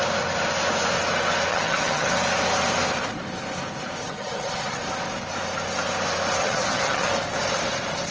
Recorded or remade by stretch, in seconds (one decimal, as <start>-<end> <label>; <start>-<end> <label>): 0.0-1.5 recorded; 1.5-2.1 remade; 2.1-4.0 recorded; 4.0-4.8 remade; 4.8-6.4 recorded; 6.4-7.1 remade; 7.1-8.1 recorded